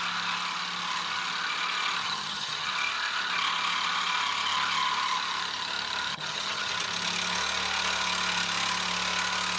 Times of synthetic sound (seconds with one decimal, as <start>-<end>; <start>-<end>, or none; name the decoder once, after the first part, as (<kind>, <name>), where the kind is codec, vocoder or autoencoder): 2.0-2.7 (vocoder, HiFi-GAN); 6.1-6.7